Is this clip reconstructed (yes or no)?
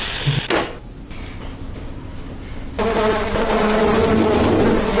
no